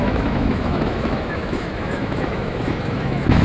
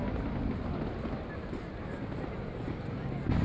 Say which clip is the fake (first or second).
first